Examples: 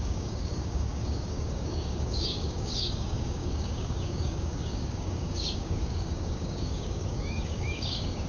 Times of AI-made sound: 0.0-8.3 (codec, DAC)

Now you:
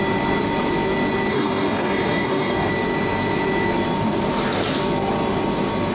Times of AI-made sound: 1.3-2.7 (codec, DAC)

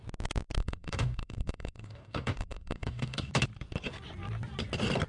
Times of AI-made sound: 0.6-3.3 (codec, DAC)

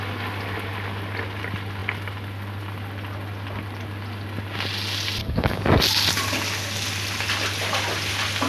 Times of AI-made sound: 5.2-5.8 (codec, DAC)

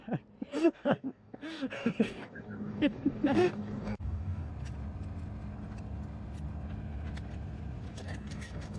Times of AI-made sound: 0.5-4.5 (codec, DAC); 7.9-8.8

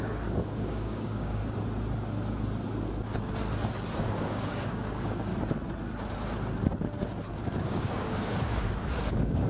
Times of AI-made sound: 0.0-1.4 (codec, DAC); 4.0-5.3; 7.3-9.5

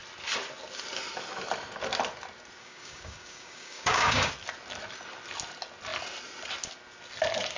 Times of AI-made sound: 2.6-4.3 (codec, DAC)

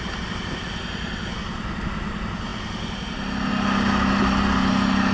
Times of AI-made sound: none